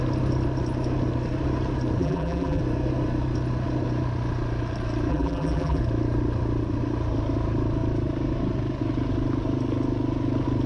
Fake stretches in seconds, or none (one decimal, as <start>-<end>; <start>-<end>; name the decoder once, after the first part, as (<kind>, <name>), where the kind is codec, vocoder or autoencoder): 2.0-2.6 (vocoder, BigVGAN v2); 5.1-5.8